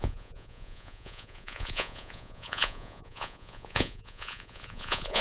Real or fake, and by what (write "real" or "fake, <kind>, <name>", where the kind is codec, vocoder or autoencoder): fake, vocoder, Vocos